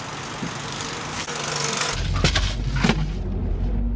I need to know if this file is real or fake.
real